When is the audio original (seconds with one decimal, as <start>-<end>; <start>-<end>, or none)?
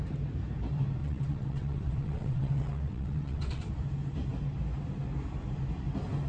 0.0-1.0; 3.7-6.3